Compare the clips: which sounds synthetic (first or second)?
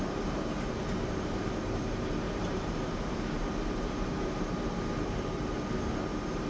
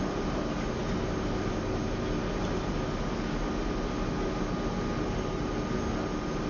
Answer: first